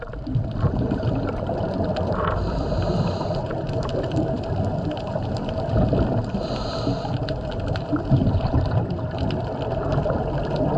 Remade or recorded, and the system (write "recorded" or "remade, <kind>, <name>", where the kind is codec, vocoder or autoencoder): remade, vocoder, BigVGAN v2